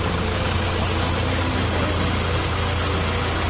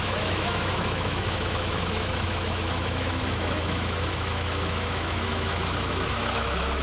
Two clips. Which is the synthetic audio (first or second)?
second